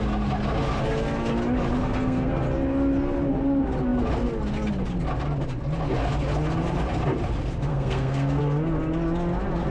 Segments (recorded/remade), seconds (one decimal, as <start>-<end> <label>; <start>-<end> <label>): 0.0-1.8 recorded; 1.8-2.3 remade; 2.3-7.7 recorded; 7.7-8.4 remade; 8.4-9.7 recorded